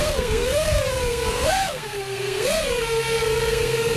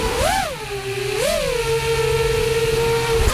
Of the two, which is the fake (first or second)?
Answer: first